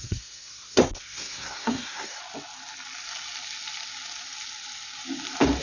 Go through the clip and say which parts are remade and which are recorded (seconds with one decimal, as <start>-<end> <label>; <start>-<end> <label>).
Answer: 0.0-2.2 remade; 2.2-5.6 recorded